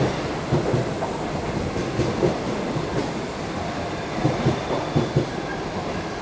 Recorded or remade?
recorded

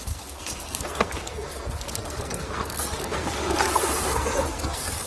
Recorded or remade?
remade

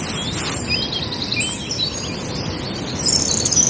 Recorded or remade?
recorded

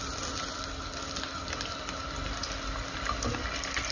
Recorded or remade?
recorded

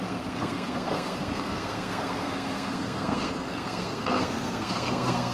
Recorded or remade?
remade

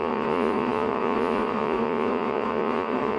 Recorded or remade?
remade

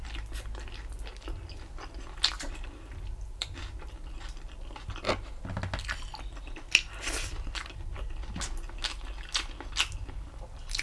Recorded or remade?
recorded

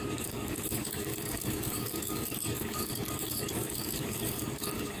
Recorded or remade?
remade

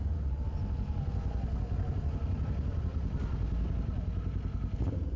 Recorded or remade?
recorded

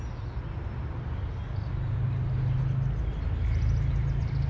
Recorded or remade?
recorded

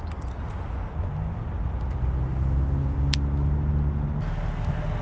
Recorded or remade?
recorded